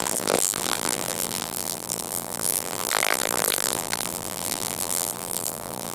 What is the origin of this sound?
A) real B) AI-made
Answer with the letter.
B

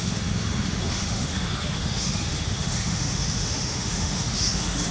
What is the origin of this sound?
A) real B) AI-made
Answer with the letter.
B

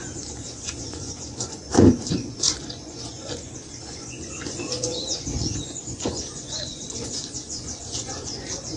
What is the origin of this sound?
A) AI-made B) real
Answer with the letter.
A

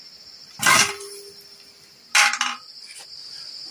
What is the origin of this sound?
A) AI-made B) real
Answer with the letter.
B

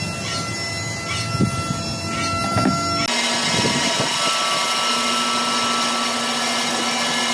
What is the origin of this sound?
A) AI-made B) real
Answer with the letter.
B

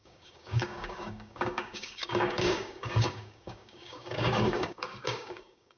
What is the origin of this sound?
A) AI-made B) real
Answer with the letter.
A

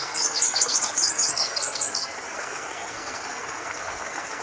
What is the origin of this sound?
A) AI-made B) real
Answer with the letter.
A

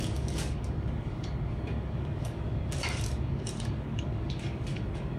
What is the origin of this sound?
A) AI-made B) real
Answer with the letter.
A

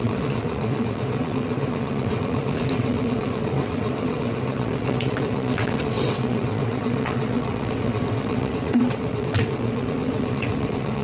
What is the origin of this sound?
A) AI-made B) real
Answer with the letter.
A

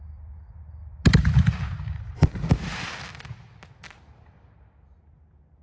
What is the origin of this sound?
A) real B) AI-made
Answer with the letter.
A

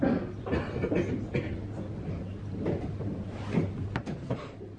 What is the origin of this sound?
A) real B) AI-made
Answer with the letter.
A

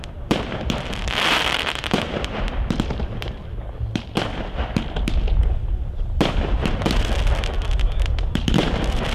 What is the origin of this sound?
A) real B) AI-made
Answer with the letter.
B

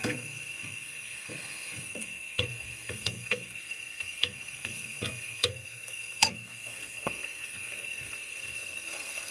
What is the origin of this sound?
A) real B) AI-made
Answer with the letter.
B